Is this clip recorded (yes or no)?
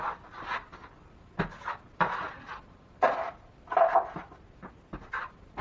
yes